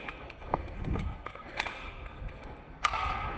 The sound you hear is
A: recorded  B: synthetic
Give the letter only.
B